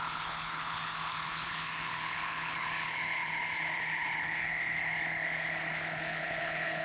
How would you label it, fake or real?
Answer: fake